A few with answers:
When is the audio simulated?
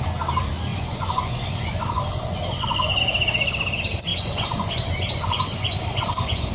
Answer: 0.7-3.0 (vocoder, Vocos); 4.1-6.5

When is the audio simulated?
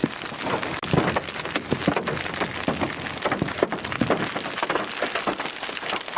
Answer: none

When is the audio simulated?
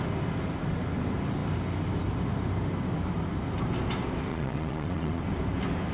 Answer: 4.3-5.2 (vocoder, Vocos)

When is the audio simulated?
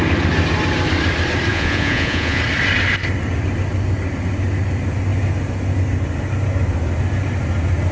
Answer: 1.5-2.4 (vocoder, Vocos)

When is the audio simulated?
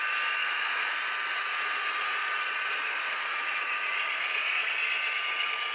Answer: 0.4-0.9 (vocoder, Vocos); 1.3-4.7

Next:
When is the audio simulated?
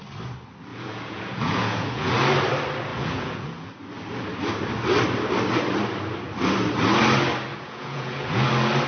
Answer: 0.7-2.1 (vocoder, Vocos); 2.9-3.7; 7.5-8.5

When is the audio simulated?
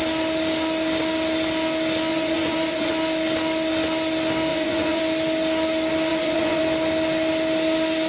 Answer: 2.1-2.9 (vocoder, Vocos); 4.5-5.0; 6.1-6.6